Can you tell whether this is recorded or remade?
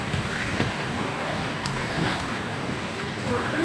remade